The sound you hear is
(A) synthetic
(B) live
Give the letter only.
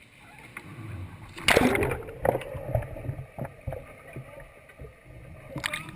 B